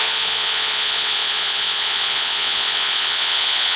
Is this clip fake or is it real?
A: fake